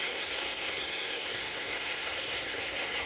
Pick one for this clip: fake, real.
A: fake